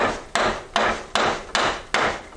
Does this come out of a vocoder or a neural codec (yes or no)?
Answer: no